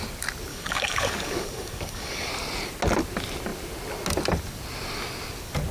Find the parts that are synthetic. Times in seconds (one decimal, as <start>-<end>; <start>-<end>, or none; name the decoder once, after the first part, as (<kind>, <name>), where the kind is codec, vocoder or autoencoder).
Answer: 0.5-2.3 (codec, DAC)